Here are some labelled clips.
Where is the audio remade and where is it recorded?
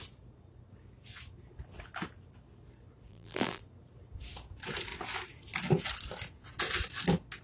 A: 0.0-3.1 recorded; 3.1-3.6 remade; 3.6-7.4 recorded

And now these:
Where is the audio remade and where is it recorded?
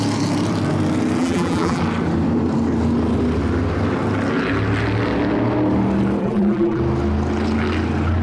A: 0.0-1.2 recorded; 1.2-1.8 remade; 1.8-6.2 recorded; 6.2-6.8 remade; 6.8-8.2 recorded